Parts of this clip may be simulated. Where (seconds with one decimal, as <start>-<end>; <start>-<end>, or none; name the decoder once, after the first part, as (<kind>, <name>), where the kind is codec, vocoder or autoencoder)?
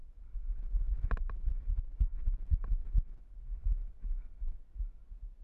0.0-1.0 (vocoder, BigVGAN v2)